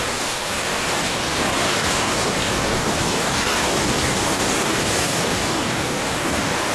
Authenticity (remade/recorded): remade